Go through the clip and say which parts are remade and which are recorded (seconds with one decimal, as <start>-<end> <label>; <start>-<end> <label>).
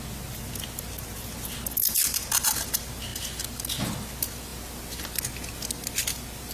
0.0-6.5 recorded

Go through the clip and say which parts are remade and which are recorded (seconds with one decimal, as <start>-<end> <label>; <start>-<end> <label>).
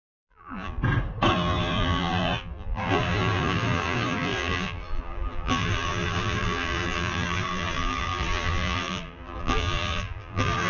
0.0-0.8 remade; 0.8-1.3 recorded; 1.3-10.7 remade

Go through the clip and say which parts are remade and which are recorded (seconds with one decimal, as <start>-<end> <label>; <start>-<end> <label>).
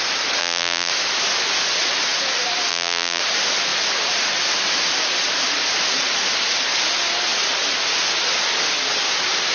0.0-0.4 recorded; 0.4-0.9 remade; 0.9-2.7 recorded; 2.7-3.2 remade; 3.2-9.5 recorded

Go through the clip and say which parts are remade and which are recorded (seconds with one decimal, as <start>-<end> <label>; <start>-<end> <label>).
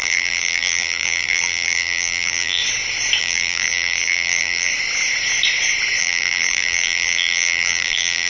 0.0-2.6 remade; 2.6-3.2 recorded; 3.2-4.7 remade; 4.7-6.0 recorded; 6.0-8.3 remade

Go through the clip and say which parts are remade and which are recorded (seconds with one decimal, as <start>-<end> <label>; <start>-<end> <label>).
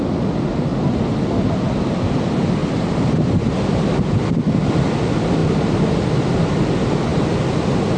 0.0-2.6 recorded; 2.6-4.5 remade; 4.5-8.0 recorded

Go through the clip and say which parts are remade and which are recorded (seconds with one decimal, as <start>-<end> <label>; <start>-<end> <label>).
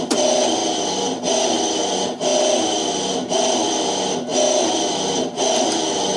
0.0-0.6 remade; 0.6-1.2 recorded; 1.2-2.3 remade; 2.3-3.3 recorded; 3.3-4.3 remade; 4.3-4.9 recorded; 4.9-6.2 remade